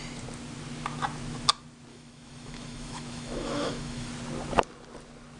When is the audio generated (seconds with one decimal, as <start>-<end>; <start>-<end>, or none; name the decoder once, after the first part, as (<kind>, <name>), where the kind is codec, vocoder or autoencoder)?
1.9-4.1 (autoencoder, DAC-VAE)

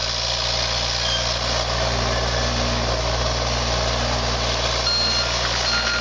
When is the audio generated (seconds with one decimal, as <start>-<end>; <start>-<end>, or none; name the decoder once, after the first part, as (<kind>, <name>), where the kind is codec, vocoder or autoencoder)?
none

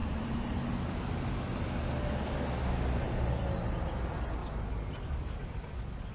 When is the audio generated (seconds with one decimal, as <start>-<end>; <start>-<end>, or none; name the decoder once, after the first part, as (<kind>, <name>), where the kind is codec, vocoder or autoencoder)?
0.0-0.6 (vocoder, BigVGAN v2); 4.4-5.5

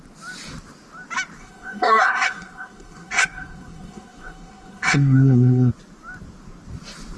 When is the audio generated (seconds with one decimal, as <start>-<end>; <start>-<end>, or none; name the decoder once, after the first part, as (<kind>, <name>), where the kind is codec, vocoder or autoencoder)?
1.4-5.7 (codec, SNAC)

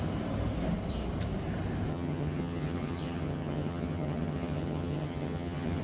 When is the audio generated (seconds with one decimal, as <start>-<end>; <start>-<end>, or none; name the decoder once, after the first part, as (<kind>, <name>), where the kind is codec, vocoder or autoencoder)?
1.9-5.8 (vocoder, HiFi-GAN)

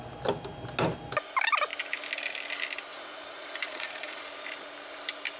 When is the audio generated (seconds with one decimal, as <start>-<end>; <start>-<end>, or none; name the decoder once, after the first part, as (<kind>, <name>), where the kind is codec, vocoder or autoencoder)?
2.9-4.2 (vocoder, Vocos)

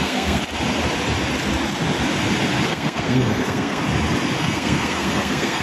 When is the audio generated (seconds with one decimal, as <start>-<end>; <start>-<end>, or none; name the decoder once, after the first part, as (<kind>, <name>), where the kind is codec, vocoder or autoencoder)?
0.0-0.4 (codec, SNAC); 2.7-3.8; 4.4-5.6